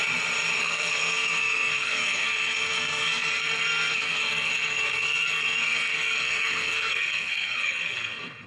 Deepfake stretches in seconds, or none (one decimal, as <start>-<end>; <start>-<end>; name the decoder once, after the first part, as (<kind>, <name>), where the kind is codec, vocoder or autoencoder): 0.6-8.5 (codec, SNAC)